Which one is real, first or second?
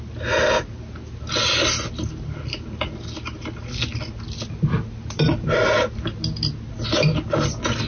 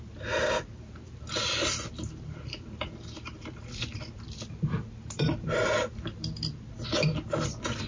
first